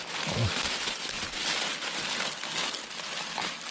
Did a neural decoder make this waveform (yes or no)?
no